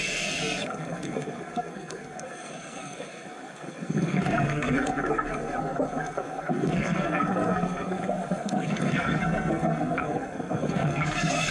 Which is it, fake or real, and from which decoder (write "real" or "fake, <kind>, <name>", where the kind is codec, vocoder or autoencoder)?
fake, codec, SNAC